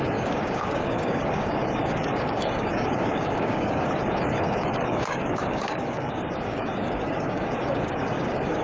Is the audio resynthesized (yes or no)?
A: yes